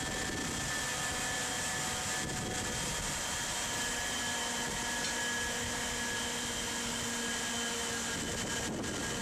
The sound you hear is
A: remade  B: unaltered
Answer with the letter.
B